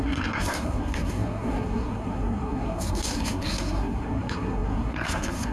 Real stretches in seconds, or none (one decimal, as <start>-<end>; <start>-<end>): none